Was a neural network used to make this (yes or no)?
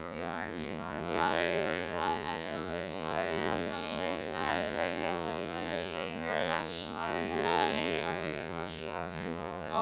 yes